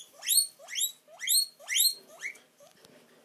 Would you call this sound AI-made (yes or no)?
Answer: no